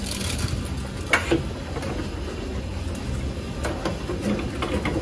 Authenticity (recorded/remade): recorded